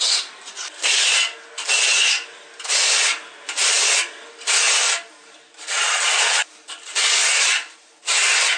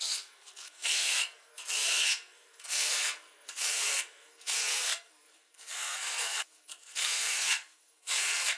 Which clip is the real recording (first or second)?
first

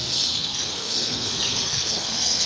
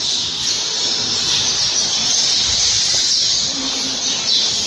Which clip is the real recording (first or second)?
second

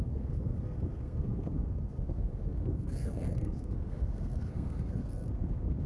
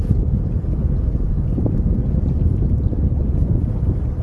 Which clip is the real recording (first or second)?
second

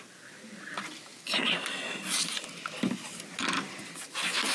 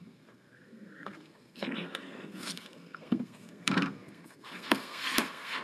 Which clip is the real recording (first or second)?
first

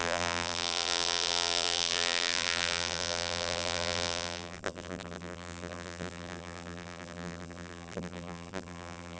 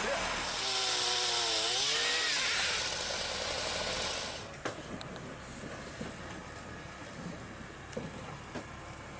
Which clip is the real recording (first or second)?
second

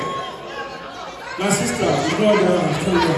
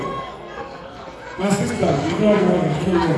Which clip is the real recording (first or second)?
first